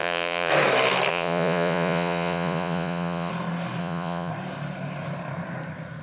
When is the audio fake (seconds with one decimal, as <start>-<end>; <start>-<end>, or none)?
0.0-0.5; 1.1-3.3; 3.8-4.3